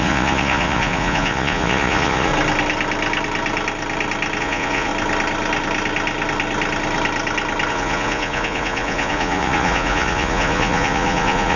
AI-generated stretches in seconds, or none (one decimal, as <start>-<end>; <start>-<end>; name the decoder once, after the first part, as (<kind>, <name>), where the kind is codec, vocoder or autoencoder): 0.0-2.3 (vocoder, Vocos); 4.4-4.9; 7.7-11.6